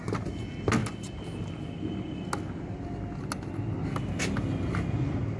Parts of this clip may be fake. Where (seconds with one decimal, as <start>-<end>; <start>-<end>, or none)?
none